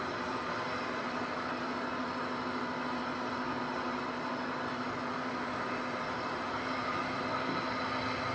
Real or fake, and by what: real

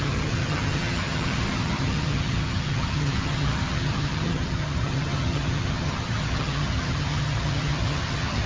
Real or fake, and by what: fake, vocoder, HiFi-GAN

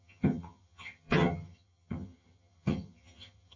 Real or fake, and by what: fake, vocoder, HiFi-GAN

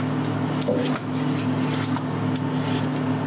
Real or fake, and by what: real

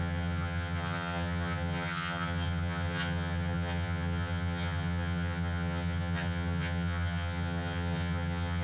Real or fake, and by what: fake, vocoder, HiFi-GAN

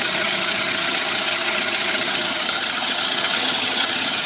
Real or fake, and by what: fake, vocoder, HiFi-GAN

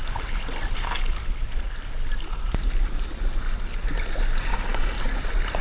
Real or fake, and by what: real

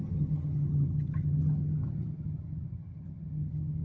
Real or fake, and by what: fake, vocoder, HiFi-GAN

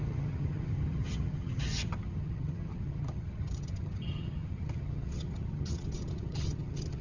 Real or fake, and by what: fake, vocoder, HiFi-GAN